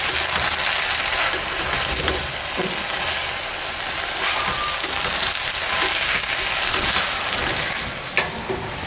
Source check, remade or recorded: recorded